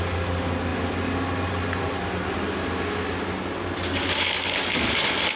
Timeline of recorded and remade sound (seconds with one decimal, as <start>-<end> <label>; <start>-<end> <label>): 0.0-5.4 recorded